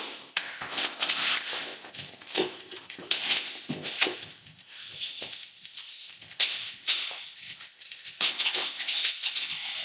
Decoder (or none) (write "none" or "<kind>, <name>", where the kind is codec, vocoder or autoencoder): codec, ZipCodec